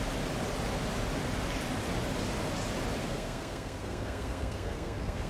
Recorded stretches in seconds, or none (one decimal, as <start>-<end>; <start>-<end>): 0.0-3.0